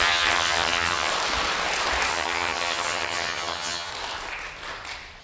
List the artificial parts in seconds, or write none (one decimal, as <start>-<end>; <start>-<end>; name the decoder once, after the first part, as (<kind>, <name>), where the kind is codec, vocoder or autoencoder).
0.0-1.1 (vocoder, HiFi-GAN); 2.1-3.9